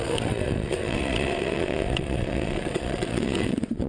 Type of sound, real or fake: fake